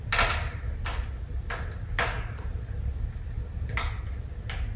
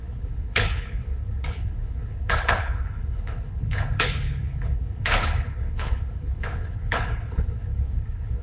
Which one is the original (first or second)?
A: first